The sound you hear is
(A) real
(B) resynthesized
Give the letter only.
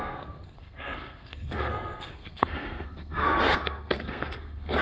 B